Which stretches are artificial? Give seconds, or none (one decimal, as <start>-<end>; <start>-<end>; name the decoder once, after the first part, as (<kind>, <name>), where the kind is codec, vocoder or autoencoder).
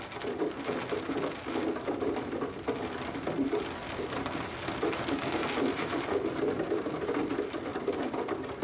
7.7-8.6 (vocoder, BigVGAN v2)